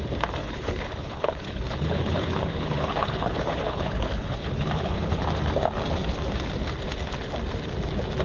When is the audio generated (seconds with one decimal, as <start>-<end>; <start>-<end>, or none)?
0.4-5.2